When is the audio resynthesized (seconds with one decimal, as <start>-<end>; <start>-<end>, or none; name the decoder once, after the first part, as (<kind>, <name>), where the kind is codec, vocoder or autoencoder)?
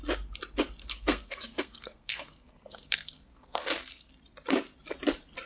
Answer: 0.8-4.1 (codec, SNAC)